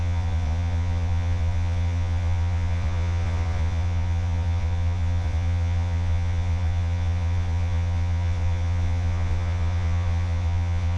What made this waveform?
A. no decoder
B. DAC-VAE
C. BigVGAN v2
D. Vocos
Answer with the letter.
D